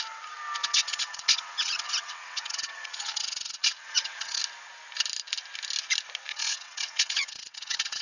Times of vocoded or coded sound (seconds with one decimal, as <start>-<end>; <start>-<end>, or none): 0.6-4.4; 6.3-8.0